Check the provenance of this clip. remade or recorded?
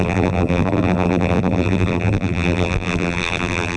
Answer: remade